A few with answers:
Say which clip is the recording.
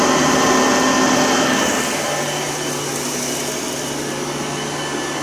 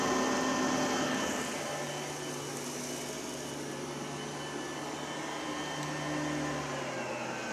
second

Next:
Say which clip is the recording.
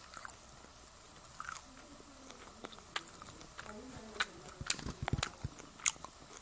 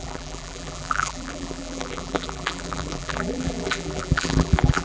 first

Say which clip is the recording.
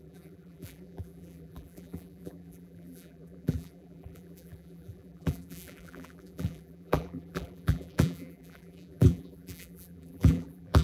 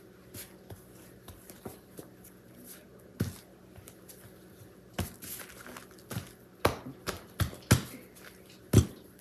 second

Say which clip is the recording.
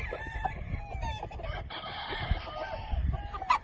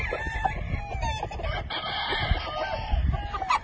second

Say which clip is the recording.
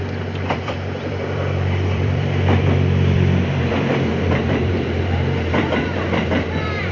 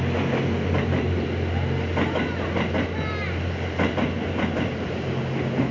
second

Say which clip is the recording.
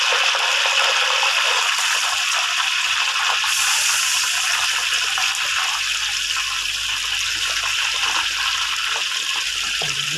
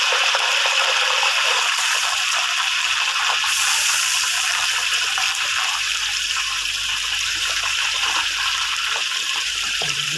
first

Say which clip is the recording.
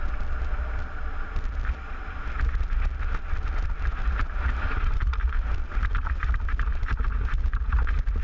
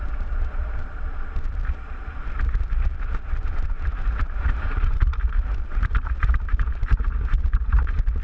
first